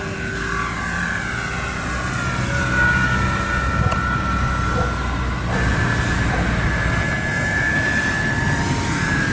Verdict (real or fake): real